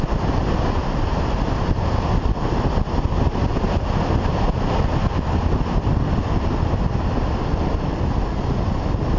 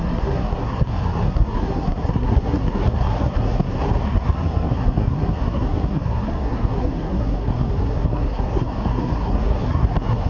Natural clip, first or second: first